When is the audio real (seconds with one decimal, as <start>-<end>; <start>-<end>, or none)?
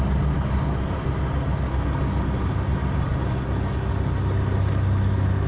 0.0-5.5